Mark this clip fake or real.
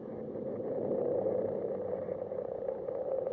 real